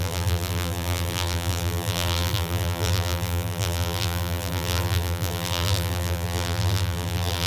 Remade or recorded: remade